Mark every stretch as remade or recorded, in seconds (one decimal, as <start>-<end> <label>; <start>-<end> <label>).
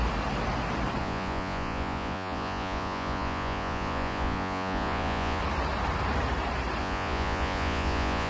0.0-1.0 recorded; 1.0-5.4 remade; 5.4-6.8 recorded; 6.8-8.3 remade